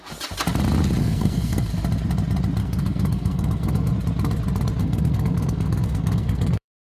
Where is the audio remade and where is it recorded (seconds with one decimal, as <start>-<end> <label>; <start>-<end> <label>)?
0.0-1.0 recorded; 1.0-1.7 remade; 1.7-2.6 recorded; 2.6-3.9 remade; 3.9-4.8 recorded; 4.8-7.0 remade